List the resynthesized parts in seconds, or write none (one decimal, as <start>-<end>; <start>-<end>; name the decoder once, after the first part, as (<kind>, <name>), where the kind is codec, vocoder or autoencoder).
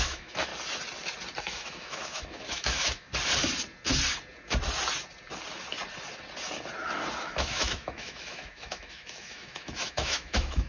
0.0-0.5 (autoencoder, DAC-VAE); 1.4-3.1; 7.2-10.7